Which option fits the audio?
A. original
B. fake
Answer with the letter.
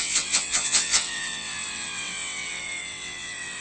B